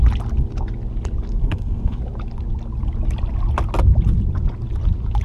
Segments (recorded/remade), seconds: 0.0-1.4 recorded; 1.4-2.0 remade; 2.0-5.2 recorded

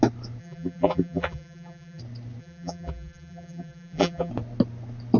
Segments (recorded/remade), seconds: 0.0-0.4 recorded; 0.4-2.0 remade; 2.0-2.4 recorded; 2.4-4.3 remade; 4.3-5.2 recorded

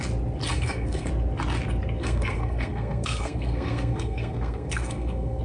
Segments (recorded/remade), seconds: 0.0-0.5 recorded; 0.5-1.1 remade; 1.1-2.0 recorded; 2.0-5.4 remade

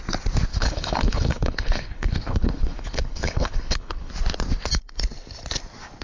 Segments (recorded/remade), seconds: 0.0-0.5 recorded; 0.5-4.1 remade; 4.1-6.0 recorded

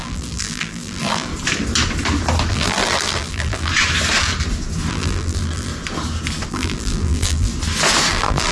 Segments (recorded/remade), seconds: 0.0-1.3 remade; 1.3-2.5 recorded; 2.5-3.7 remade; 3.7-4.9 recorded; 4.9-5.7 remade; 5.7-6.5 recorded; 6.5-7.5 remade; 7.5-8.1 recorded; 8.1-8.5 remade